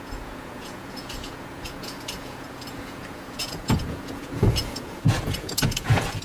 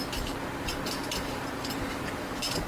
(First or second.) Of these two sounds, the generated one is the first